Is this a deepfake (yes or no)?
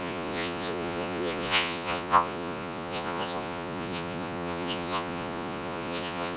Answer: yes